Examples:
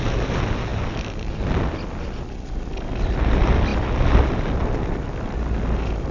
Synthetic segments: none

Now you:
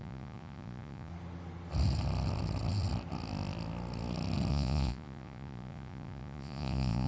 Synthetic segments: 0.0-1.1; 4.5-7.1

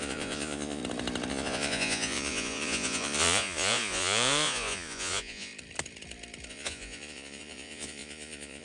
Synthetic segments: 0.0-0.8; 1.3-5.5; 6.5-8.6

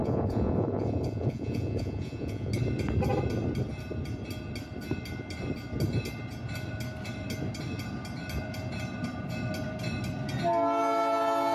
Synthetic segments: 0.0-2.5

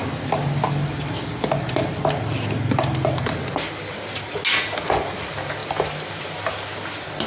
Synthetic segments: none

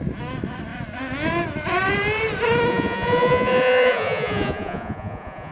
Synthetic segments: 2.7-5.5

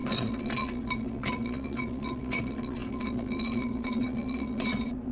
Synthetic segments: 0.0-5.1

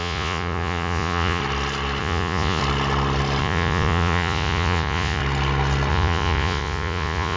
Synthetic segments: 0.0-1.4; 2.0-2.6; 3.4-5.2; 5.9-7.4